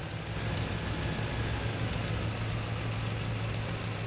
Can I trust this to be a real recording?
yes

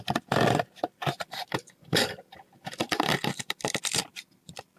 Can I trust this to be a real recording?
no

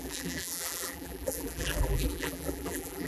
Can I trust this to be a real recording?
no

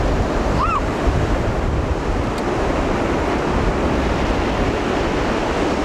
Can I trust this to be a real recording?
yes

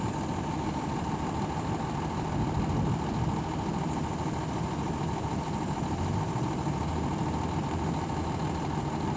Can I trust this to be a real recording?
yes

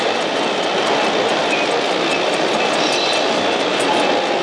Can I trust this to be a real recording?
yes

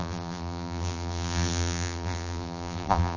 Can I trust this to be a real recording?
no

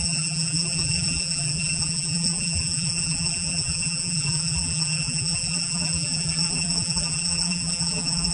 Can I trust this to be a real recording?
no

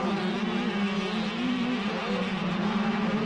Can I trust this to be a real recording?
yes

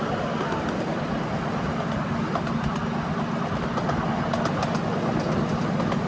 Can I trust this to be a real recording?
yes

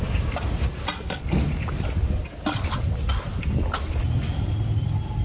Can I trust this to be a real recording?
yes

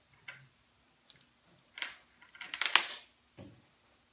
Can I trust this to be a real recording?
yes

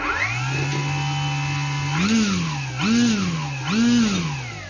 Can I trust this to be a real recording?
yes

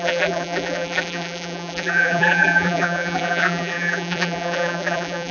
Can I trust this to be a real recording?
no